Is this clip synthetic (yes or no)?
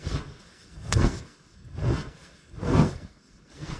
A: yes